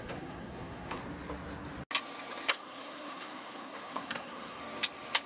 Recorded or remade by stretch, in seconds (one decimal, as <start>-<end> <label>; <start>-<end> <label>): 0.0-1.0 remade; 1.0-2.5 recorded; 2.5-4.6 remade; 4.6-5.3 recorded